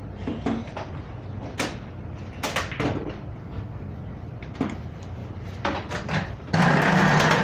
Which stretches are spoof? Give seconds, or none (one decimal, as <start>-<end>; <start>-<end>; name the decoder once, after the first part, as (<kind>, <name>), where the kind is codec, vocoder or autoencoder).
3.4-3.9 (codec, SNAC)